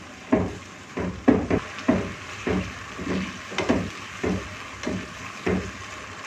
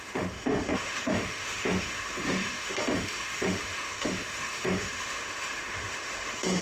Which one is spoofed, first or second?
second